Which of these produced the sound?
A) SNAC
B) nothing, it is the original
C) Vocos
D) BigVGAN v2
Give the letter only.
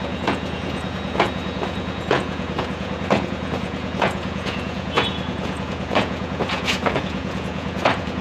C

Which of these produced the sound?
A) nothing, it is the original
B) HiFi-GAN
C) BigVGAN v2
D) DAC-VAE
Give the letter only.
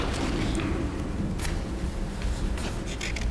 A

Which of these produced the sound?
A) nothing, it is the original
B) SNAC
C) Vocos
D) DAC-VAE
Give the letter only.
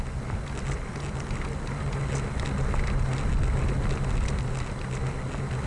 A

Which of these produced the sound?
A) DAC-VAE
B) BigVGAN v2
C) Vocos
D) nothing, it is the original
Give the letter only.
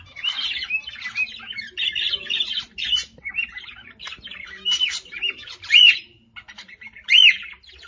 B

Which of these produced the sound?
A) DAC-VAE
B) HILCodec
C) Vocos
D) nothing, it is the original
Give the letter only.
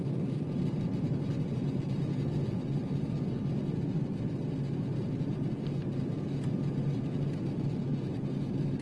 D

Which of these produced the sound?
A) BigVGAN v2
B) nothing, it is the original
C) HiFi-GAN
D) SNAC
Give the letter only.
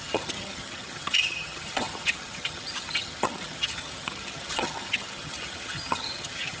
C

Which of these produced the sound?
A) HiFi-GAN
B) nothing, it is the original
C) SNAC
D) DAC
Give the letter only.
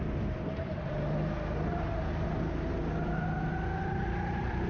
B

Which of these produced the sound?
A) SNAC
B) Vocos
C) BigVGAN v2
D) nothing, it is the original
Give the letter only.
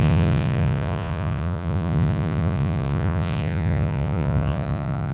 B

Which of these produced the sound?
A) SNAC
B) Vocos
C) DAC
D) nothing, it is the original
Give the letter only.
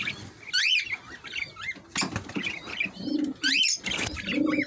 D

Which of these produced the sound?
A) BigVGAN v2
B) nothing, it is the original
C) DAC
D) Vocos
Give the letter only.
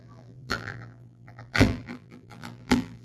A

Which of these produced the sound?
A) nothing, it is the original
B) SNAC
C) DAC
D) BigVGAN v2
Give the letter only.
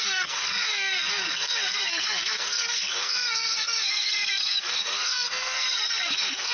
B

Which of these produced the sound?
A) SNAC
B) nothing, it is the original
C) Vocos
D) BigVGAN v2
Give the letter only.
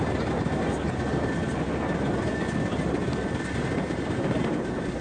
B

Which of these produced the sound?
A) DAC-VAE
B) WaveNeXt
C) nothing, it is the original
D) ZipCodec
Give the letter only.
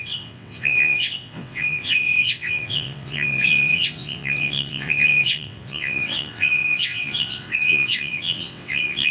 B